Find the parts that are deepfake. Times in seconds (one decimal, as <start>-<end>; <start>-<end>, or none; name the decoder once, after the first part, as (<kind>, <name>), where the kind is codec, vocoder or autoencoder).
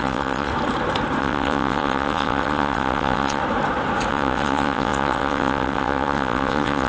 0.0-0.5 (vocoder, WaveNeXt); 1.2-3.4; 4.1-6.9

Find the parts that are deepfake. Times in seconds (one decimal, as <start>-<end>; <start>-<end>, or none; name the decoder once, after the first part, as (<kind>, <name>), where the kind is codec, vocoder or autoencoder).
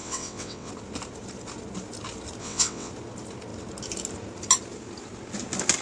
0.0-0.7 (vocoder, WaveNeXt); 2.4-2.9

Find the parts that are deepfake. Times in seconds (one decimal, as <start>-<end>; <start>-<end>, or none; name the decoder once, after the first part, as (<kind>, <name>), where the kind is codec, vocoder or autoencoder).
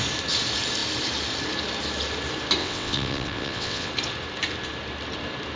2.6-3.9 (vocoder, WaveNeXt)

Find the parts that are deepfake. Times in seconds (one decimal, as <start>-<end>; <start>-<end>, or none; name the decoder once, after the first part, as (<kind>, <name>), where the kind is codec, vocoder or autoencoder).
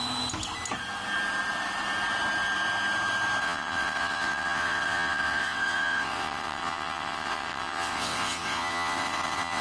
3.4-9.6 (vocoder, WaveNeXt)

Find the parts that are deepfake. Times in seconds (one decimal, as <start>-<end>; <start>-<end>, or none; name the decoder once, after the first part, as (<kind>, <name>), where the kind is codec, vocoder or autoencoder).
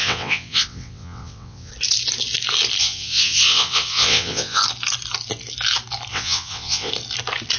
0.0-1.7 (vocoder, WaveNeXt); 2.8-4.6; 6.1-6.9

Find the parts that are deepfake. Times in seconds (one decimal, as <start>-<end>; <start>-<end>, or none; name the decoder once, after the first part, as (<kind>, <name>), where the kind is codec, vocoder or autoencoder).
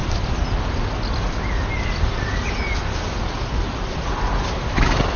none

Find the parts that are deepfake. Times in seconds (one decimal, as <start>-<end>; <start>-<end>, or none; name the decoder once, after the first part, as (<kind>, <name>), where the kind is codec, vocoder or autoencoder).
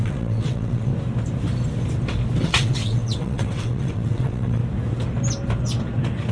0.0-0.9 (vocoder, WaveNeXt); 2.4-4.6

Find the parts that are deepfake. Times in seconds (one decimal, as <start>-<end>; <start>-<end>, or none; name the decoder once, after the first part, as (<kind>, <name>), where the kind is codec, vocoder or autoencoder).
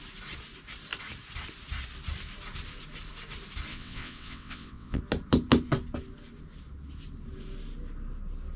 3.7-5.0 (vocoder, WaveNeXt)